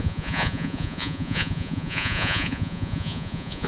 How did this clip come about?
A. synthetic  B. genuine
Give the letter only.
A